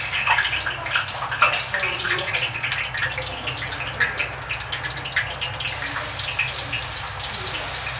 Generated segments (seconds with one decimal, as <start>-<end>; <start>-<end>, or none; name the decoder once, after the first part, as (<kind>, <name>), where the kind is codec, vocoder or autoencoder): 1.9-2.7 (vocoder, Vocos)